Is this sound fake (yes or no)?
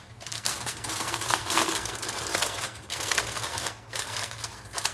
yes